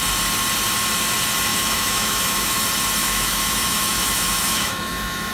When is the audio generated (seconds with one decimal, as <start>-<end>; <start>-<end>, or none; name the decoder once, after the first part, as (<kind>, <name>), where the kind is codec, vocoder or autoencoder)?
1.5-2.6 (autoencoder, DAC-VAE); 3.0-5.3